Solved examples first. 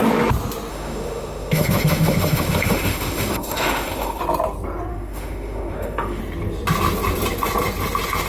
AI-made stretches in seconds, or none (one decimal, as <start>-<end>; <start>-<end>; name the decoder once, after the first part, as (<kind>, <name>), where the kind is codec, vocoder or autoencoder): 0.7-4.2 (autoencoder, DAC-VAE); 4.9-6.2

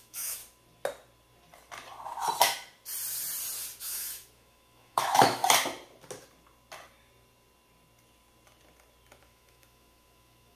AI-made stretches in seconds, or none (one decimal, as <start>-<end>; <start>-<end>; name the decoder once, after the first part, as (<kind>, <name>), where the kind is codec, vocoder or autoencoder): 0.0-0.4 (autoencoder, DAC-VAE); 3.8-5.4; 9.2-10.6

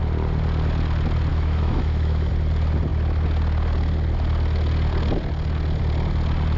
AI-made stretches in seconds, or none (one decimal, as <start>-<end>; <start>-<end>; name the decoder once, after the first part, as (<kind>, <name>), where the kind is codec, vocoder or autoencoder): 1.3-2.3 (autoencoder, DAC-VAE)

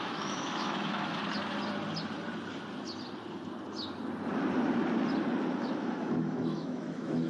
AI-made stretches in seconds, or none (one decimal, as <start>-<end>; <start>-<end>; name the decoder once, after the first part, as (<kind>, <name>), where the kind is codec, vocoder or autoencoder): 0.0-1.2 (autoencoder, DAC-VAE); 5.6-7.3

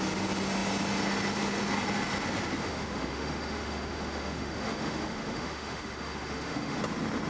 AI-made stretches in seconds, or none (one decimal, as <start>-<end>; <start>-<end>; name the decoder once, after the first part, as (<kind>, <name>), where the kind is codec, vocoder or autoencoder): 2.6-6.8 (autoencoder, DAC-VAE)

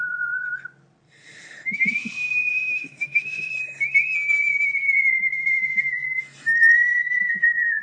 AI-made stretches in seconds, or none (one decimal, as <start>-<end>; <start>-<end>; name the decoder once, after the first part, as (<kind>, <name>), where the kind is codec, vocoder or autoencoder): 2.5-3.5 (autoencoder, DAC-VAE)

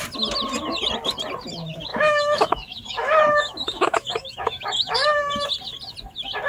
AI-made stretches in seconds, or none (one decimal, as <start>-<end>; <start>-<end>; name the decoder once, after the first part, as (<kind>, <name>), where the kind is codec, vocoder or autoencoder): 1.9-5.5 (autoencoder, DAC-VAE)